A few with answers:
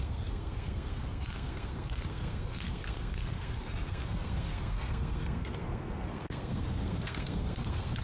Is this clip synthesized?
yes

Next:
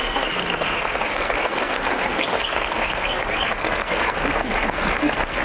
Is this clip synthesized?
yes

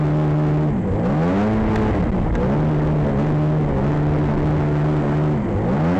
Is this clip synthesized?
no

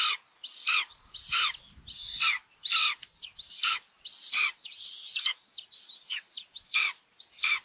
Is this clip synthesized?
no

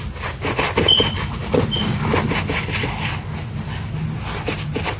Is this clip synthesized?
no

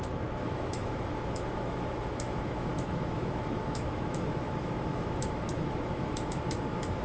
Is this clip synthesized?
yes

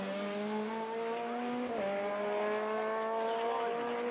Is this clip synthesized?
no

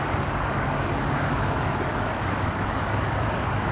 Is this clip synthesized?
yes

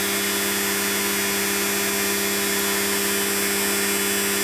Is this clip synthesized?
no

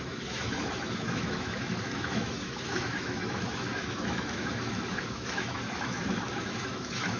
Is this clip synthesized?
yes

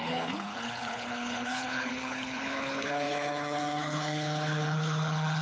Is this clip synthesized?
yes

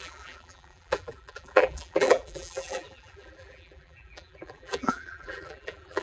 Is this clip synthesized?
yes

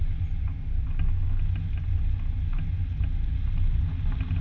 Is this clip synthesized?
no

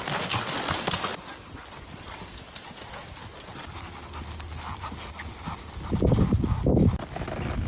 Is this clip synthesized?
no